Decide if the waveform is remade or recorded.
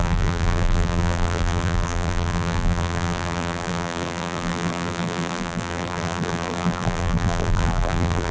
remade